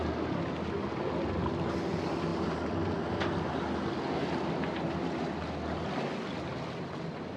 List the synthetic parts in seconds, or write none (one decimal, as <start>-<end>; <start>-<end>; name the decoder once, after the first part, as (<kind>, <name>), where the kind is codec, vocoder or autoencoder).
none